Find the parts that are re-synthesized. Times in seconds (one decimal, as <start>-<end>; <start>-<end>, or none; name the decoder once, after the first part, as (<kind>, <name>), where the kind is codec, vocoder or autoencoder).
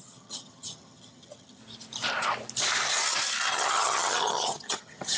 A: 0.0-1.6 (vocoder, HiFi-GAN); 3.5-5.2